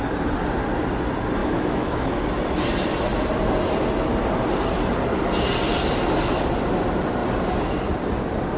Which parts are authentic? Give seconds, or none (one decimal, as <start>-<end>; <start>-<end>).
0.0-1.4; 2.2-8.6